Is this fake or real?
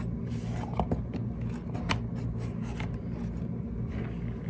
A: real